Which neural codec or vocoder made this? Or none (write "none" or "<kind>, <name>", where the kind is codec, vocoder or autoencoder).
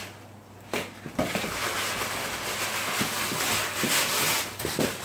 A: none